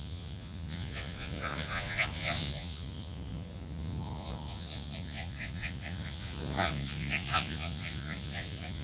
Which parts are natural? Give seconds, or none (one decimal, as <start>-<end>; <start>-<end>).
none